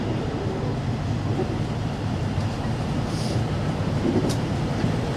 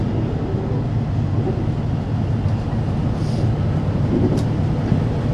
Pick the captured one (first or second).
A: second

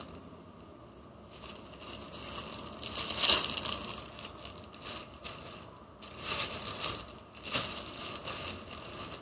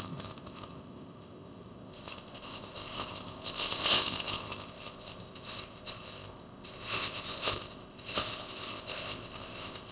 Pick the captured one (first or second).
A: first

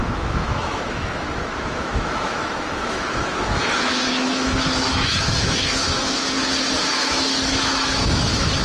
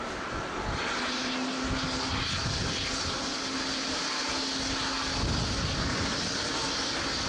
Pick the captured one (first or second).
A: second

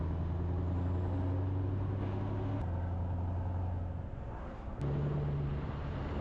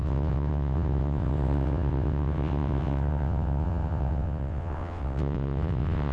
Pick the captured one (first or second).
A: first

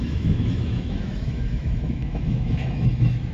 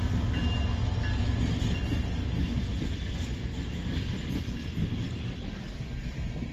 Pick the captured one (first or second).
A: second